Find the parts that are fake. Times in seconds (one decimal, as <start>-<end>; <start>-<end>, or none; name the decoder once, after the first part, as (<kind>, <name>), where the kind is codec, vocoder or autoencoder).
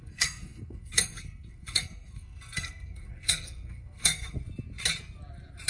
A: 0.0-4.4 (codec, SNAC)